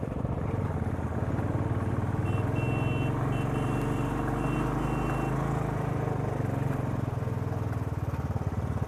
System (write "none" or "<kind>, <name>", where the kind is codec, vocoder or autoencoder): none